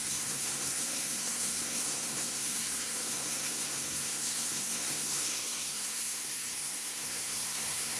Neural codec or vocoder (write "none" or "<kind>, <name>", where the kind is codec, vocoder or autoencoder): codec, SNAC